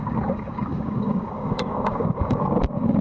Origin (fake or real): fake